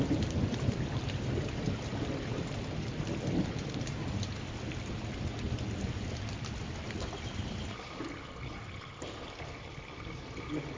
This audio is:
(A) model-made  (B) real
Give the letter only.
A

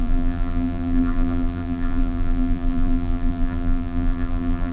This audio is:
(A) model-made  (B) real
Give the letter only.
A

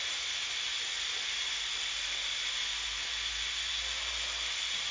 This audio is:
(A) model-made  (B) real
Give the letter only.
B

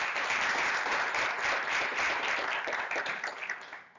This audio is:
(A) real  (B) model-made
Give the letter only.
B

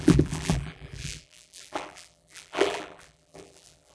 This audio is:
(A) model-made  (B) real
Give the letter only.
A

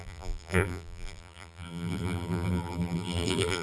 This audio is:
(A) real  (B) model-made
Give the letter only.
B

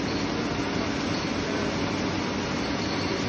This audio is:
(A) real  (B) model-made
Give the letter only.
A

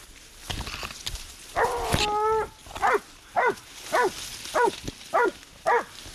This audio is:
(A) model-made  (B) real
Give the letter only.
B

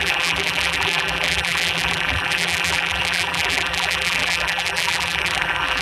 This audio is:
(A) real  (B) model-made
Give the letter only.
B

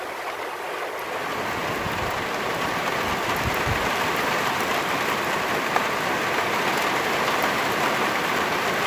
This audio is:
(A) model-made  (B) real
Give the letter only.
A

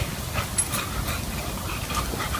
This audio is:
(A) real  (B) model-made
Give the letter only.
B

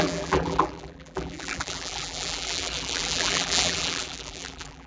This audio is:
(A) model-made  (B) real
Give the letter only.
A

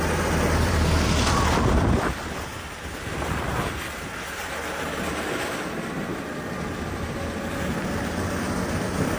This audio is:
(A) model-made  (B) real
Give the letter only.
A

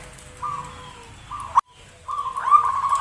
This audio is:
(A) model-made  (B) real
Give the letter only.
B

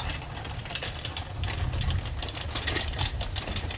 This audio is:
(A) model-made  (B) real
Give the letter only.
B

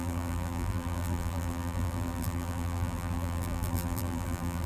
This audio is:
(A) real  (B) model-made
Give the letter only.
B